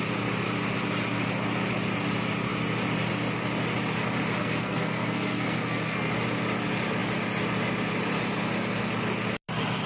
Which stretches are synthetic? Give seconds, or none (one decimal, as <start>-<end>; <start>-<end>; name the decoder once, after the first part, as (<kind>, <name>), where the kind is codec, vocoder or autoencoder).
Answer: 4.4-6.1 (codec, SNAC)